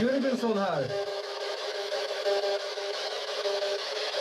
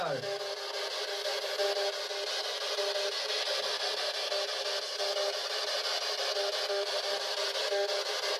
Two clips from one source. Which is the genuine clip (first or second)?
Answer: second